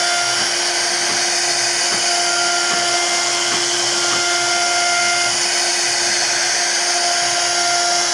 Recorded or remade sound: recorded